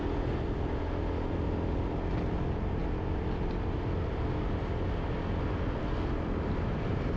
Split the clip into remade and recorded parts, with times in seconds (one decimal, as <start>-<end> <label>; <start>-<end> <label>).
0.0-7.2 recorded